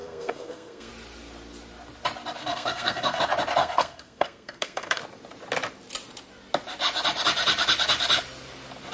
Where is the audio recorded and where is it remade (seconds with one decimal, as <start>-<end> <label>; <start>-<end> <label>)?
0.0-0.9 remade; 0.9-2.4 recorded; 2.4-3.2 remade; 3.2-3.6 recorded; 3.6-5.0 remade; 5.0-8.9 recorded